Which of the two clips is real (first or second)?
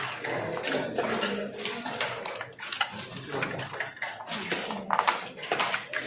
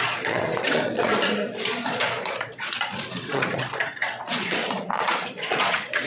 first